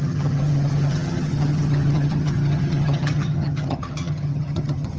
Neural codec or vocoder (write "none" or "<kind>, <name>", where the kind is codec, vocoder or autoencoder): vocoder, HiFi-GAN